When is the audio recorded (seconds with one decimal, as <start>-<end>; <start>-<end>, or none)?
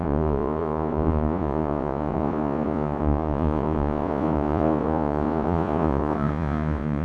none